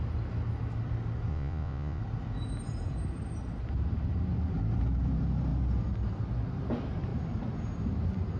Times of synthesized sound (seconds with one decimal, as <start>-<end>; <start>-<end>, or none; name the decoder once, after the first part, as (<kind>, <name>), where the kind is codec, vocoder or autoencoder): 1.3-2.0 (vocoder, Vocos)